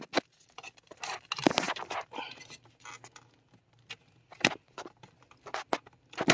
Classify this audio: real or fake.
real